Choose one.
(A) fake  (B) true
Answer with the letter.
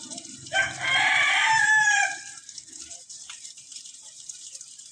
A